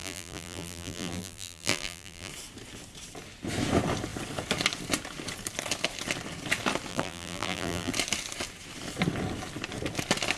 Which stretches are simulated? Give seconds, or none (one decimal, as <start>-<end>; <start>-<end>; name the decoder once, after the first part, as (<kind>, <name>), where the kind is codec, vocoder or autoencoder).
0.0-2.3 (vocoder, BigVGAN v2); 6.9-7.9